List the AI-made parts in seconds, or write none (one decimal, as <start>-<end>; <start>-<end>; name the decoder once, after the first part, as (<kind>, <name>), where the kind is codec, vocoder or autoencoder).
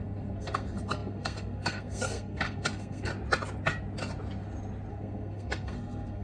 0.0-3.1 (codec, SNAC); 4.9-6.2